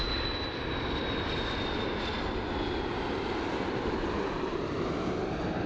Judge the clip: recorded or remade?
recorded